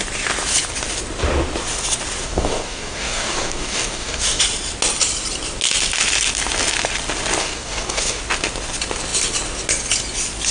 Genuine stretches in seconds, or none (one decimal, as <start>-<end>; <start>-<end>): 0.0-2.2; 4.4-7.4; 8.2-10.5